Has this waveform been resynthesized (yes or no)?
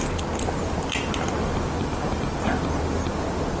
no